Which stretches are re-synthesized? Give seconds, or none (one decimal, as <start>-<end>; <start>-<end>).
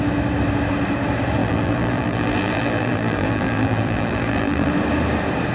1.4-4.7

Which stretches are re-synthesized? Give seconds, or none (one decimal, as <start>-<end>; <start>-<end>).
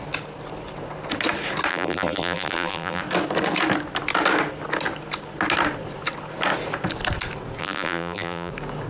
1.7-3.0; 7.6-8.5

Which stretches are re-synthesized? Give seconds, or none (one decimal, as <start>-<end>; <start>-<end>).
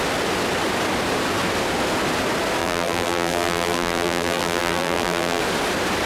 2.6-5.4